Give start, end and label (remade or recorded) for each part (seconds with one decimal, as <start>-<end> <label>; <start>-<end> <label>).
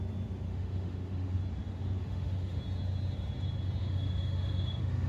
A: 0.0-0.5 recorded; 0.5-1.4 remade; 1.4-2.0 recorded; 2.0-2.6 remade; 2.6-3.8 recorded; 3.8-5.1 remade